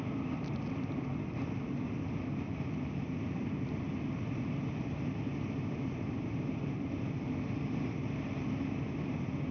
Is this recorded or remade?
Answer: recorded